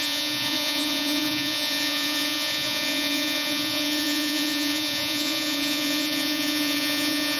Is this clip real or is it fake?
fake